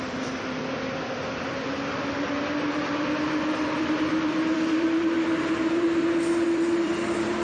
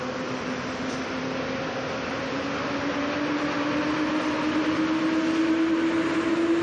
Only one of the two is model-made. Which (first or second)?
first